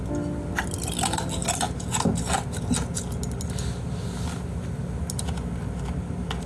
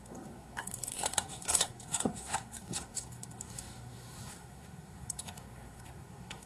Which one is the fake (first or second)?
second